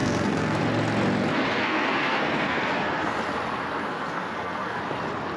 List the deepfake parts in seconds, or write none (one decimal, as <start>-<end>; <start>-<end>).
0.0-0.6; 1.5-3.1; 3.8-4.8